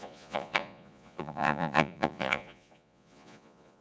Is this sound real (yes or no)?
no